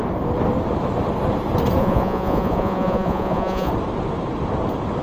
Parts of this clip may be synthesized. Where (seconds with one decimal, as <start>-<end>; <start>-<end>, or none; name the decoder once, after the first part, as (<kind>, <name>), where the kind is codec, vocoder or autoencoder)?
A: 1.8-3.7 (vocoder, Vocos)